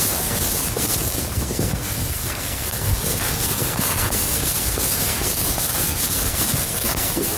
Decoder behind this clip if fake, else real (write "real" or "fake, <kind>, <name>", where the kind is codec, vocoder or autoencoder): fake, codec, SNAC